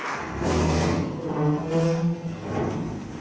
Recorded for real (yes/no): no